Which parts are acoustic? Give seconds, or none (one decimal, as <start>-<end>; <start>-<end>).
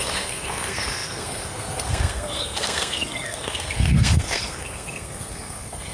none